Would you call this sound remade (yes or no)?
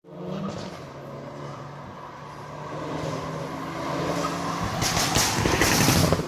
no